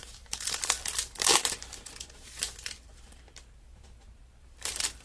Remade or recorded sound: remade